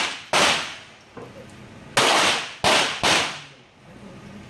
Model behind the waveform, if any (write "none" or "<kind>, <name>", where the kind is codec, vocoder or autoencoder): none